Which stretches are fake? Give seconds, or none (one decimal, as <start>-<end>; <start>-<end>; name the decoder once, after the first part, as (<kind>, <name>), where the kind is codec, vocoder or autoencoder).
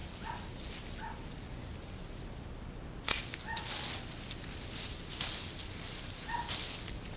none